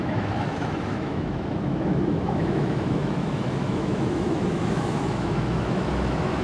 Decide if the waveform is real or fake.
fake